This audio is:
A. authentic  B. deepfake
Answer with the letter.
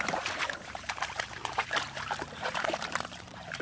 B